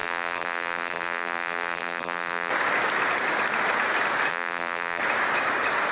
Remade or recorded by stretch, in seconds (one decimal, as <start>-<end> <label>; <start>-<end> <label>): 0.0-2.5 remade; 2.5-4.3 recorded; 4.3-5.0 remade; 5.0-5.9 recorded